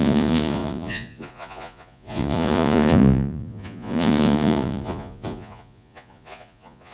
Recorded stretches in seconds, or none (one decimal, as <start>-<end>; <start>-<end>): none